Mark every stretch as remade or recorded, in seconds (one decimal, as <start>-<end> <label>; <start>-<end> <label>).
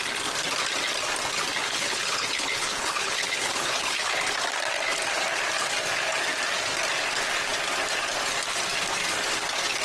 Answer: 0.0-1.6 recorded; 1.6-4.1 remade; 4.1-9.8 recorded